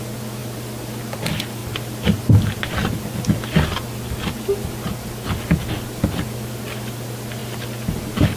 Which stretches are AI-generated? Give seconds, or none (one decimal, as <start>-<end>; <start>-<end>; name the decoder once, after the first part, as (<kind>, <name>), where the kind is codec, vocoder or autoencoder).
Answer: none